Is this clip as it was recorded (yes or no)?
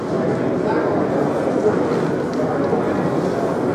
yes